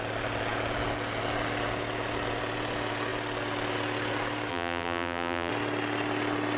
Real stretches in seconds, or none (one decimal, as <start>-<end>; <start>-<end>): 0.0-4.5; 5.5-6.6